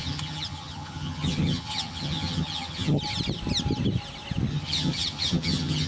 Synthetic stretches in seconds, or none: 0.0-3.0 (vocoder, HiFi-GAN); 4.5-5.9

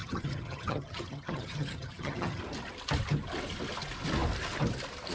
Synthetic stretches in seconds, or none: 0.0-2.4 (vocoder, HiFi-GAN)

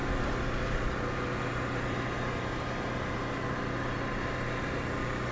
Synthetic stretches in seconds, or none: none

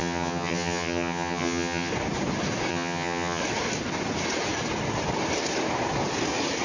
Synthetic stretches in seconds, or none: 0.0-1.9 (vocoder, HiFi-GAN); 2.7-3.4

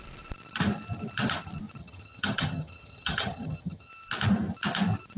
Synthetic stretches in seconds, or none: 1.8-3.9 (vocoder, HiFi-GAN)

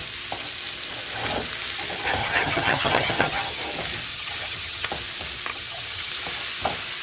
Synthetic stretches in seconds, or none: 2.2-3.6 (vocoder, HiFi-GAN); 4.1-4.9; 5.5-6.1